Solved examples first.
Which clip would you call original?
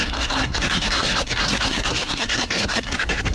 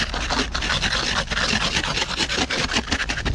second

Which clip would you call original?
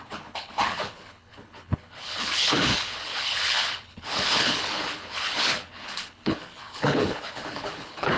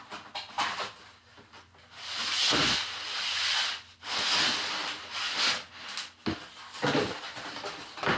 second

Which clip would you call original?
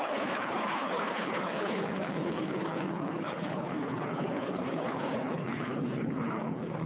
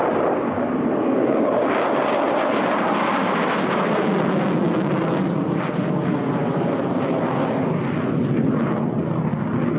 second